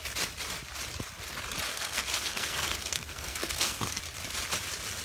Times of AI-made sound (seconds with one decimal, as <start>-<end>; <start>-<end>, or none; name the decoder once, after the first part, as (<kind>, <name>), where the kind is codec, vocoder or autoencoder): 1.7-4.0 (codec, SNAC)